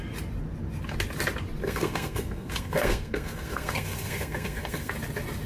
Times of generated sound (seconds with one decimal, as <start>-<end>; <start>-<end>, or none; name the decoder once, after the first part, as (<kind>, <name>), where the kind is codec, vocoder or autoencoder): 1.6-4.9 (codec, SNAC)